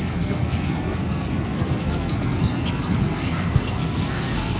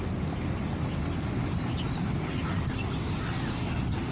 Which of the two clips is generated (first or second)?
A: first